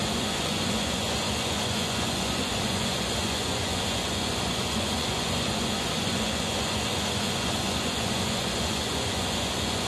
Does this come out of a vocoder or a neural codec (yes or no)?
yes